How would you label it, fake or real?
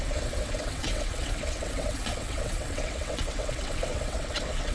fake